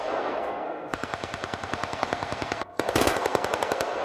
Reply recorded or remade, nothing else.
remade